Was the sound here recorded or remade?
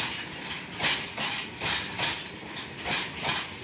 recorded